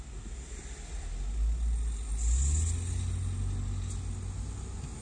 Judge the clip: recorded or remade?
recorded